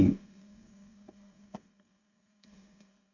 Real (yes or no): no